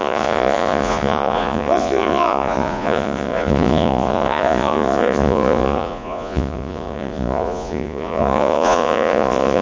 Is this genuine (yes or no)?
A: no